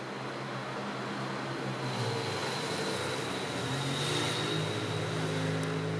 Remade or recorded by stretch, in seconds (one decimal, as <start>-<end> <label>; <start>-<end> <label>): 0.0-6.0 recorded